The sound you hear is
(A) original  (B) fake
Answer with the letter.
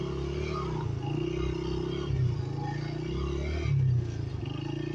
A